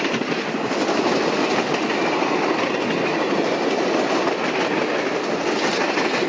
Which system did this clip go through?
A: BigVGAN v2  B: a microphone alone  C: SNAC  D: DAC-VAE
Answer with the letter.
B